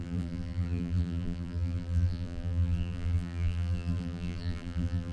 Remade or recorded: remade